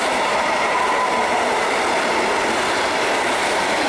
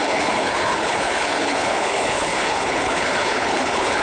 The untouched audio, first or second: first